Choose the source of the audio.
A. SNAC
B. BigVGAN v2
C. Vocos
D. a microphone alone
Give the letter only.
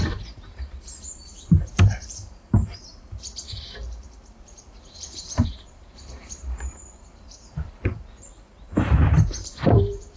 B